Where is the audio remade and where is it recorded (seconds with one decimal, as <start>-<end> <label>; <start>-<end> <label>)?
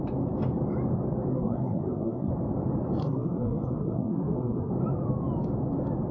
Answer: 0.0-1.3 recorded; 1.3-2.3 remade; 2.3-3.0 recorded; 3.0-4.7 remade; 4.7-6.1 recorded